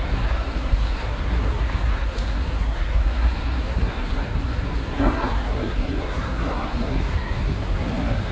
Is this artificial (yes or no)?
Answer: yes